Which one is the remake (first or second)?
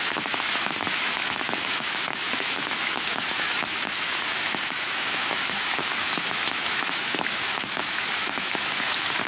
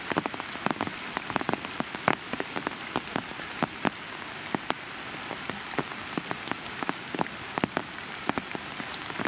first